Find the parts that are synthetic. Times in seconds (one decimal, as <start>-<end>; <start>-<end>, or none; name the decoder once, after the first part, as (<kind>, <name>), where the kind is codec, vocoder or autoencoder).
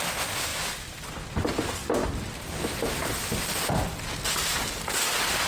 0.5-1.1 (vocoder, BigVGAN v2)